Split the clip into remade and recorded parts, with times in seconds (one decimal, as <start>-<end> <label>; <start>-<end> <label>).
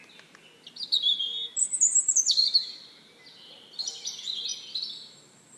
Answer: 0.0-5.6 recorded